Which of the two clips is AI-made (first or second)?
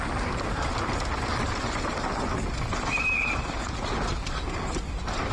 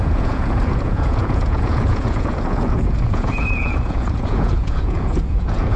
second